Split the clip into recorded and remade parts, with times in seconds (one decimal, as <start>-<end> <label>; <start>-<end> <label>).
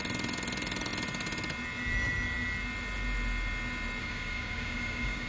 0.0-4.0 recorded; 4.0-5.3 remade